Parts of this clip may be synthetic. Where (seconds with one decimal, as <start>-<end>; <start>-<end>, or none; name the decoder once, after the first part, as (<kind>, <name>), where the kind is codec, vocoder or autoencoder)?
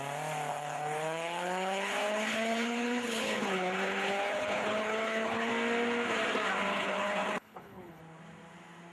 0.5-5.5 (codec, HILCodec); 6.7-8.0